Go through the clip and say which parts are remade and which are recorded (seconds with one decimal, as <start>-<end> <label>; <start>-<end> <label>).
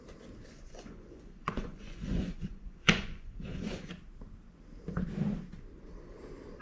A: 0.0-0.5 recorded; 0.5-3.9 remade; 3.9-6.6 recorded